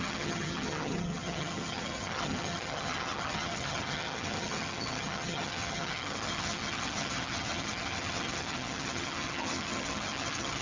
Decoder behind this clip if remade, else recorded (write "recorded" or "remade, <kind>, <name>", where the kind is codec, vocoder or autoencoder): remade, vocoder, HiFi-GAN